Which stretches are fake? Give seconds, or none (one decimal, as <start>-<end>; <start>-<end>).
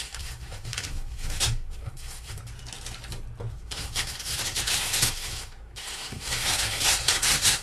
0.0-2.4; 3.5-7.6